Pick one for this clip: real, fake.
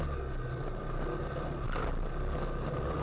real